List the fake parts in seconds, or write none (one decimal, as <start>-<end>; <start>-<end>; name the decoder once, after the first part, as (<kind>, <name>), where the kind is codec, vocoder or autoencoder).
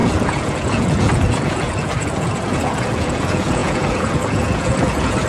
0.0-5.3 (vocoder, Vocos)